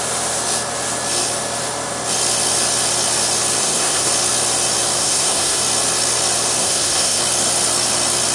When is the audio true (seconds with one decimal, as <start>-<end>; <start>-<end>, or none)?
0.0-3.6; 4.1-5.0; 5.6-6.6; 7.2-8.3